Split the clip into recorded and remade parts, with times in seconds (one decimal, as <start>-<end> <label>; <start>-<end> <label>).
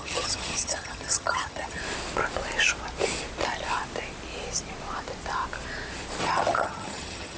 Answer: 0.0-1.8 remade; 1.8-6.2 recorded; 6.2-7.4 remade